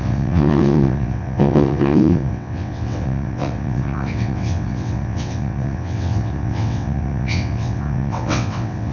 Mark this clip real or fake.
fake